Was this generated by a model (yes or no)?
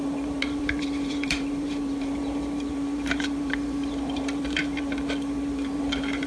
yes